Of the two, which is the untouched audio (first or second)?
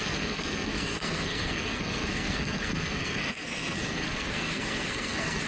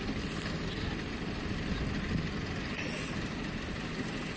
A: second